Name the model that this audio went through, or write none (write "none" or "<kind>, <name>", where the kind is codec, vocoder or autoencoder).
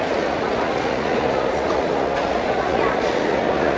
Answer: vocoder, Vocos